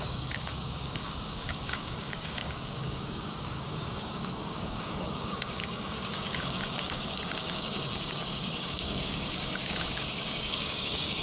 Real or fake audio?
fake